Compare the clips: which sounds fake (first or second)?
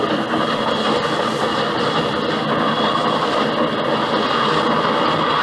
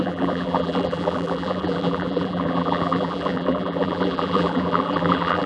second